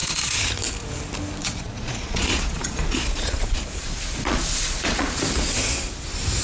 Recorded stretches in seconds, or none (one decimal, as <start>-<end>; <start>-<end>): 0.5-1.4; 5.2-6.4